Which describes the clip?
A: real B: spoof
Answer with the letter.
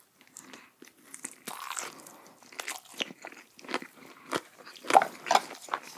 B